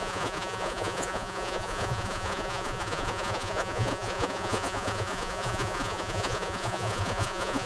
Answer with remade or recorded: remade